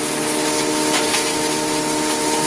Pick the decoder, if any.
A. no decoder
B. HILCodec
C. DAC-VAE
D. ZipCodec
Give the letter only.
A